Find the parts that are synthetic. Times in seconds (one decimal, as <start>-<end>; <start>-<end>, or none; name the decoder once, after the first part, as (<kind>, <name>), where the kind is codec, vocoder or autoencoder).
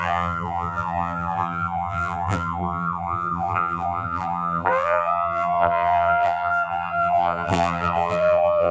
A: 0.0-8.7 (vocoder, BigVGAN v2)